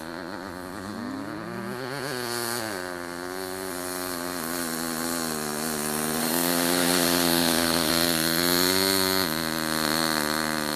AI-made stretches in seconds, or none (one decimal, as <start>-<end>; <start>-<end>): 6.2-7.9